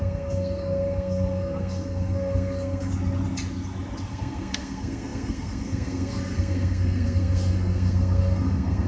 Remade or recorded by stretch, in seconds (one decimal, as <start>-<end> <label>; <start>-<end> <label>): 0.0-2.9 remade; 2.9-4.1 recorded; 4.1-8.9 remade